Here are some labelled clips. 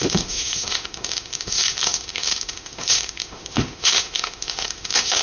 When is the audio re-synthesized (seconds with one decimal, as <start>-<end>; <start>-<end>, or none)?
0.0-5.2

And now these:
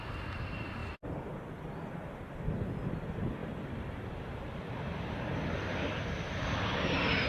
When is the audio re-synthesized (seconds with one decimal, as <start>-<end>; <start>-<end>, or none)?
0.8-1.4; 3.4-7.3

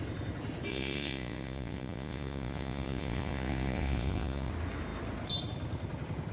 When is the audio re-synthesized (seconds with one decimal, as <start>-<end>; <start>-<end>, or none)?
0.7-4.5

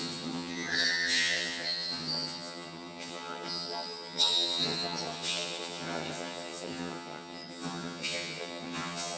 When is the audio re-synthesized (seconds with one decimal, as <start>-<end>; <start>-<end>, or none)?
0.0-9.2

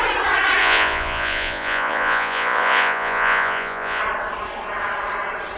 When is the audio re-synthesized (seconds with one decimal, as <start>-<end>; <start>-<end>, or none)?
0.6-4.0

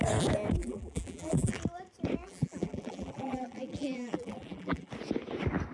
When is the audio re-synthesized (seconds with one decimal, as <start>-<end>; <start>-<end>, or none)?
0.6-1.6; 2.2-4.9

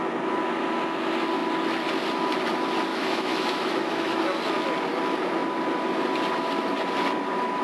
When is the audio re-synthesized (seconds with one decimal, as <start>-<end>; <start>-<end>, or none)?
2.9-4.2

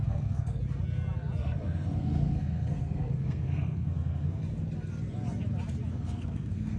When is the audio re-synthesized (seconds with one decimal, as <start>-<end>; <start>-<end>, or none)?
0.0-0.6; 1.4-4.4; 5.9-6.8